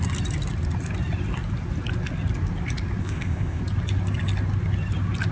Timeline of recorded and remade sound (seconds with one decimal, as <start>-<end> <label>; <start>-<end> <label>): 0.0-3.0 recorded; 3.0-3.6 remade; 3.6-5.3 recorded